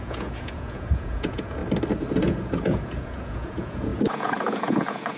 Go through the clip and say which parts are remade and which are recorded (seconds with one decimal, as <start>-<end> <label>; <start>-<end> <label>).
0.0-1.6 remade; 1.6-2.2 recorded; 2.2-5.2 remade